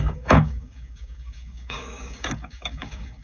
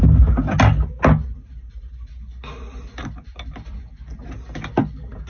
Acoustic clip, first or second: second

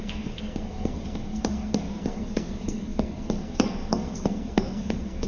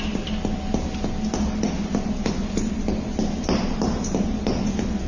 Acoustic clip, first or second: second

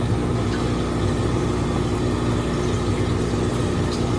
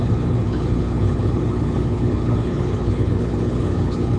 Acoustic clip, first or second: first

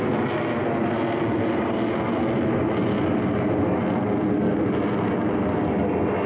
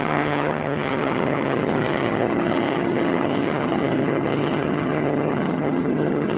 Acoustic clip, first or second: first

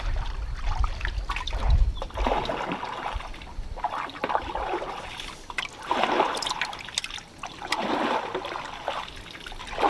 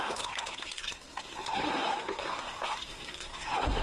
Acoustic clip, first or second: first